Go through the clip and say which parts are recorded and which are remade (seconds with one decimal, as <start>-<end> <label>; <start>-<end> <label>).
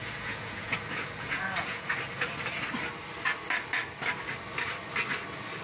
0.0-1.9 remade; 1.9-5.6 recorded